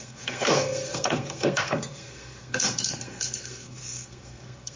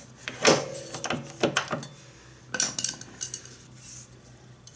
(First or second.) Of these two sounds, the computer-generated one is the first